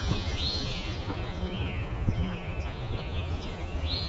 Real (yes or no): no